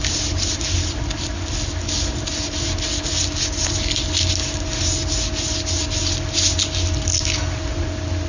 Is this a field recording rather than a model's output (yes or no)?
yes